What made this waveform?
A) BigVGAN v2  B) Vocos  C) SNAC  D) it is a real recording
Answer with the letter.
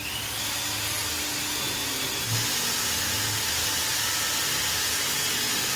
D